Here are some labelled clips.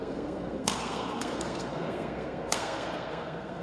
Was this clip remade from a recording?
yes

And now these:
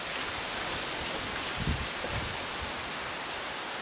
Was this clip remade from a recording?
no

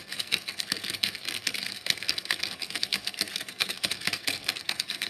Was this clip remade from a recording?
yes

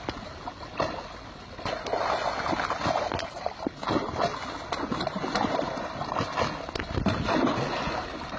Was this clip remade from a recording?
no